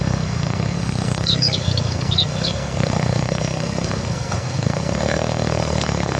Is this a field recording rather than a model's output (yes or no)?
no